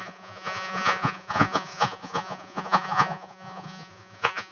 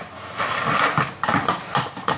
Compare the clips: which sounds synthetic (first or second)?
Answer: first